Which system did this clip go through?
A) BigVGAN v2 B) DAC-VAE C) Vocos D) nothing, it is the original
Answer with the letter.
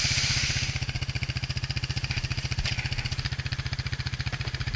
A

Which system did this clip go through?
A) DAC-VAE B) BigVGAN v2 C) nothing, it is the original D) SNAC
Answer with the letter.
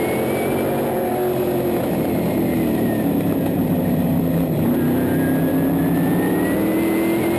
C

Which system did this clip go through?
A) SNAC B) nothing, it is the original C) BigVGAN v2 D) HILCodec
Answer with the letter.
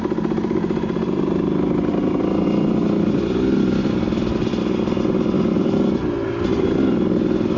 B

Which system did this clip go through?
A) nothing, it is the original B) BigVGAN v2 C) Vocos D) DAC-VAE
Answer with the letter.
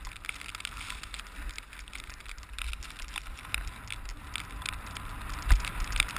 A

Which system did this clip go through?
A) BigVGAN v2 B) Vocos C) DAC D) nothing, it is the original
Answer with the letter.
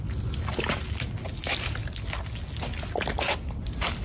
D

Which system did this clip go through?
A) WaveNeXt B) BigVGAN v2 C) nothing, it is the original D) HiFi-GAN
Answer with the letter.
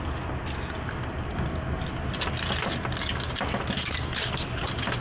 C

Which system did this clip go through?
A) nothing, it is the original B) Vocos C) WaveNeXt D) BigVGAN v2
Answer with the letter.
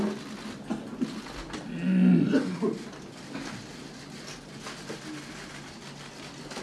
A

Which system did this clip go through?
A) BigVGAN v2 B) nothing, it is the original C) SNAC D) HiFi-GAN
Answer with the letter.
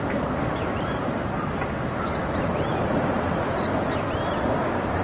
A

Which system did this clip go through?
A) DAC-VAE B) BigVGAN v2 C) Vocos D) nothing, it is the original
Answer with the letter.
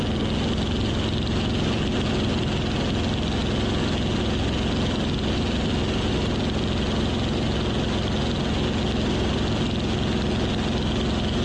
D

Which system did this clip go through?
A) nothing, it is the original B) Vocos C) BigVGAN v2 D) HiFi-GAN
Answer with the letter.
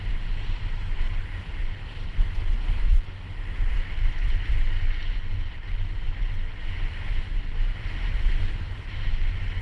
A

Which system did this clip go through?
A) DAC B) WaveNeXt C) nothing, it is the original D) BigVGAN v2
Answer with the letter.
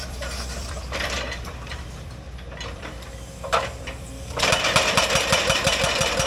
D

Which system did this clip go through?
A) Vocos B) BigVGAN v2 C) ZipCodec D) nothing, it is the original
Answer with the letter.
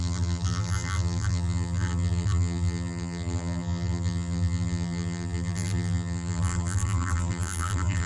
B